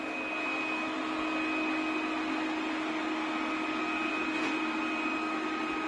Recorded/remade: recorded